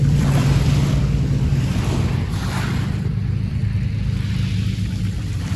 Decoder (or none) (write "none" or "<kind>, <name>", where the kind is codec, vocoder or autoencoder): vocoder, BigVGAN v2